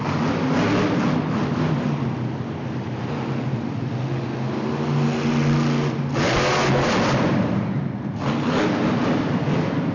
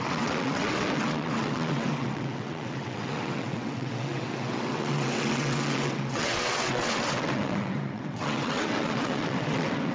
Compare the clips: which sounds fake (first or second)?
second